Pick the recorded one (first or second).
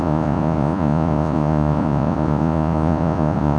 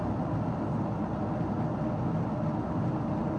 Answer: second